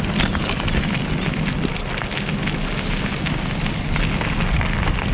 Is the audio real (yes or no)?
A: yes